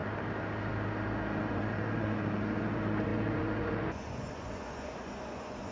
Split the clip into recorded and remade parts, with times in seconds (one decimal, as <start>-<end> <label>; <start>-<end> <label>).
0.0-1.4 recorded; 1.4-5.7 remade